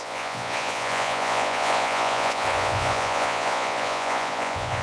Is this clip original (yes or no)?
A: no